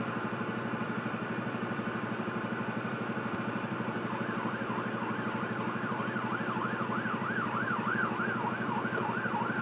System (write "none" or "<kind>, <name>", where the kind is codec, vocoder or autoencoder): none